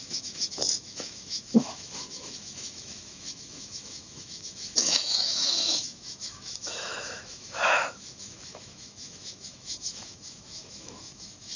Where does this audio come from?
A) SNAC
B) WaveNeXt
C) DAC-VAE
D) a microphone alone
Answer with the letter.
C